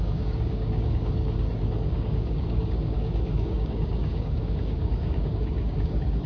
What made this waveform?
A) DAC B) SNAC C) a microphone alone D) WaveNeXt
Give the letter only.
A